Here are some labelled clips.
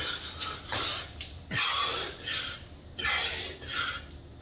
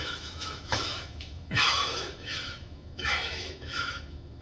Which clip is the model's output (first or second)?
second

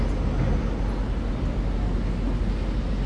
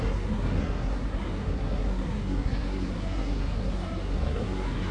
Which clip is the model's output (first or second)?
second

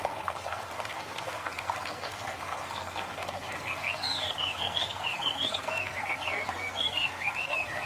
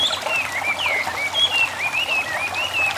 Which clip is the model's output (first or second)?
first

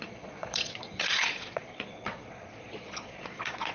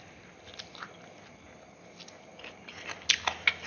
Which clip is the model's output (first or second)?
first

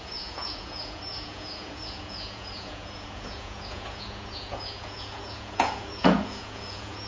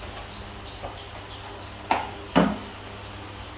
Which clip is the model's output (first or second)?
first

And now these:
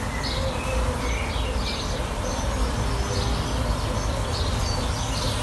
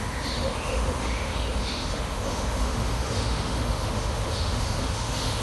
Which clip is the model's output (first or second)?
second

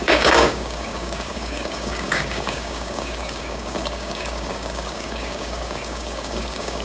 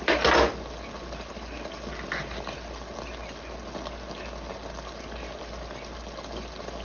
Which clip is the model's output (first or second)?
first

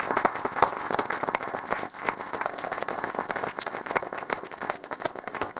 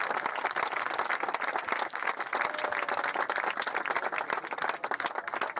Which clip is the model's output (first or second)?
first